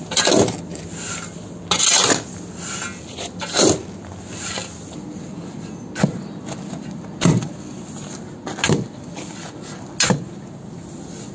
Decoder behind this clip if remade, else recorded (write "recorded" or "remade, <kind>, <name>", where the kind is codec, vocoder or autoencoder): recorded